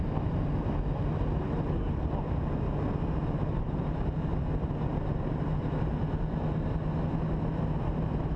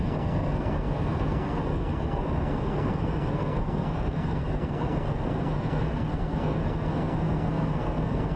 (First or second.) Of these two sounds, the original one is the first